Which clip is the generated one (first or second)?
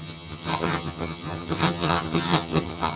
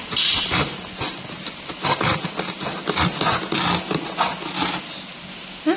first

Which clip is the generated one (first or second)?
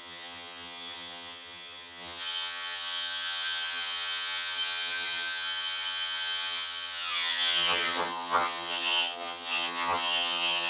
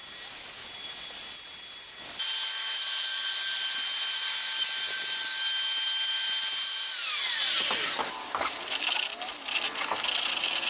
first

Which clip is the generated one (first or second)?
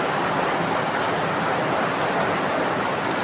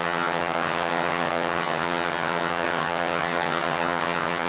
second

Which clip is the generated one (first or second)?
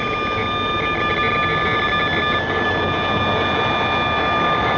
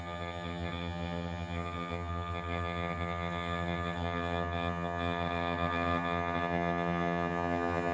second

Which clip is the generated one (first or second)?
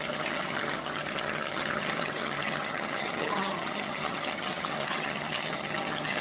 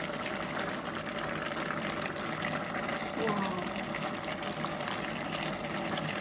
first